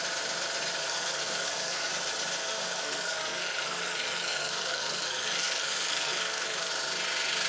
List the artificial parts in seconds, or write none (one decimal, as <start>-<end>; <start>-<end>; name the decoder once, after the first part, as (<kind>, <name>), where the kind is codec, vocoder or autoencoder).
0.8-1.9 (codec, SNAC); 2.4-6.7